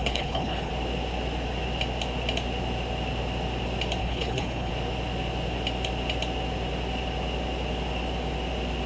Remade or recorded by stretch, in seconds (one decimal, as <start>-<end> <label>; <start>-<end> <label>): 0.0-0.7 remade; 0.7-4.0 recorded; 4.0-4.7 remade; 4.7-8.9 recorded